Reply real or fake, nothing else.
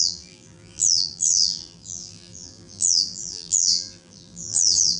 fake